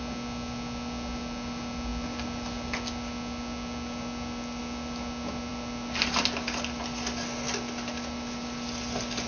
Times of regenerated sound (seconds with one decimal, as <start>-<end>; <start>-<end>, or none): none